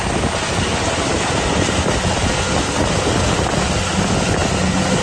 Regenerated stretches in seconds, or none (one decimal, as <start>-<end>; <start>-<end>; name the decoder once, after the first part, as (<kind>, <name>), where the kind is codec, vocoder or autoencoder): none